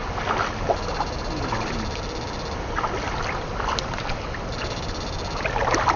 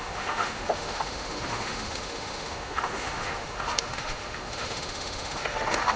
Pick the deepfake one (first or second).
second